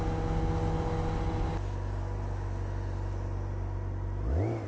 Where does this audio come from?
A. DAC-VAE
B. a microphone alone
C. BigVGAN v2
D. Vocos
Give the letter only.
B